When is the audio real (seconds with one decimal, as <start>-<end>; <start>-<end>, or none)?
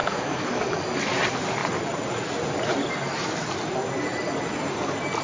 0.8-5.2